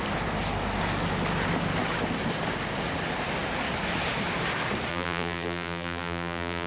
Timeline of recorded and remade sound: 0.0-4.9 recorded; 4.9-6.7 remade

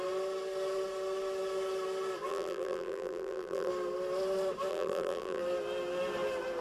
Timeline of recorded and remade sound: 0.0-2.3 recorded; 2.3-3.7 remade; 3.7-4.7 recorded; 4.7-5.4 remade; 5.4-6.6 recorded

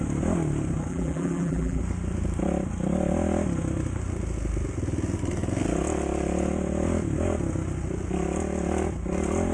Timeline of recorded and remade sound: 0.0-0.9 recorded; 0.9-1.8 remade; 1.8-9.5 recorded

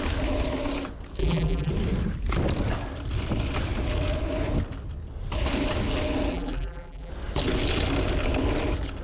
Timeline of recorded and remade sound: 0.0-1.2 recorded; 1.2-1.7 remade; 1.7-6.3 recorded; 6.3-7.1 remade; 7.1-9.0 recorded

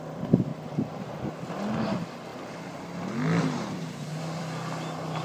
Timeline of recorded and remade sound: 0.0-5.2 recorded